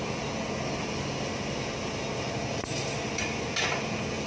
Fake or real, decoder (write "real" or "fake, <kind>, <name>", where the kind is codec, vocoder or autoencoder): real